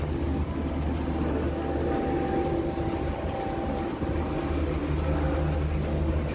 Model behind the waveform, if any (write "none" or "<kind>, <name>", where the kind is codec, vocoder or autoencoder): none